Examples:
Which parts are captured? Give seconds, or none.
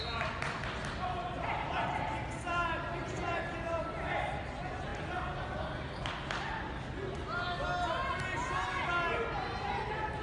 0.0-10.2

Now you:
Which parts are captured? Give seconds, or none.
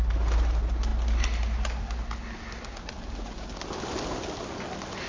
0.0-5.1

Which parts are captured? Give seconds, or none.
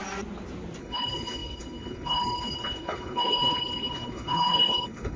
0.0-0.8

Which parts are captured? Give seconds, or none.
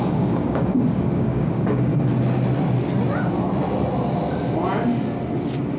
1.9-5.8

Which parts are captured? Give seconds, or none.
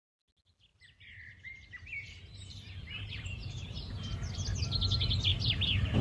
0.0-0.7; 4.3-5.3